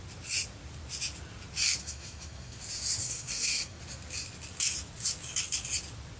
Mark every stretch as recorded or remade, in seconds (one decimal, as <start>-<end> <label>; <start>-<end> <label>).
0.0-1.8 recorded; 1.8-2.6 remade; 2.6-3.0 recorded; 3.0-3.8 remade; 3.8-6.2 recorded